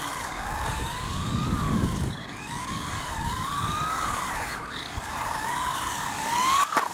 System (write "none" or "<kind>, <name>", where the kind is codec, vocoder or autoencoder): codec, DAC